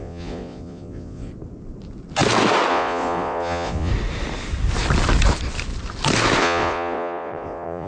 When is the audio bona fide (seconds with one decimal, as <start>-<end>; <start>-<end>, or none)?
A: 1.3-2.7; 3.9-6.4